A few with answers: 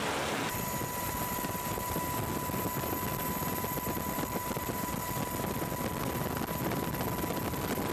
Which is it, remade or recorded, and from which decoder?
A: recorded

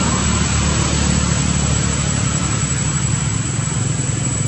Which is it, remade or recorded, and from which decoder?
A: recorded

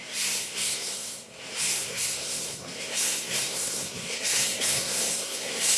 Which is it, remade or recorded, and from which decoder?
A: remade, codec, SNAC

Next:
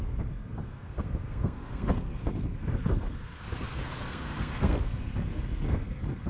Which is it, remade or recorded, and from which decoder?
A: remade, codec, SNAC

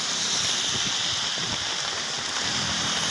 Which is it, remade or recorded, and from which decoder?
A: recorded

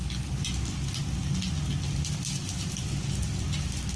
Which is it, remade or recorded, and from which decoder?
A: recorded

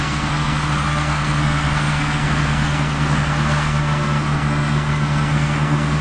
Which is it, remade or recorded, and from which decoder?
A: remade, codec, SNAC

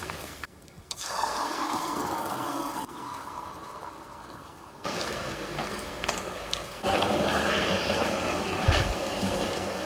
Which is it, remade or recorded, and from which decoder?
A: remade, codec, SNAC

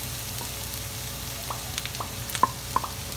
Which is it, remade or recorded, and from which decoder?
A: recorded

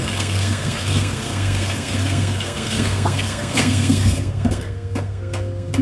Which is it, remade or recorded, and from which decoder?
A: remade, codec, SNAC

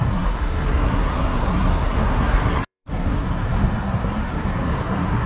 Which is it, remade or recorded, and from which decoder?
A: remade, codec, SNAC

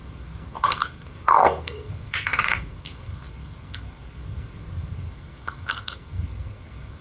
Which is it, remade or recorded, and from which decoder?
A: remade, codec, SNAC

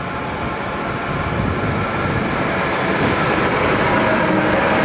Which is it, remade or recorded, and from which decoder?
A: recorded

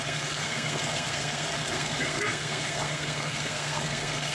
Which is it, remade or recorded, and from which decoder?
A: remade, codec, SNAC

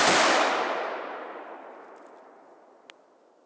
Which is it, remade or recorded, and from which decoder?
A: recorded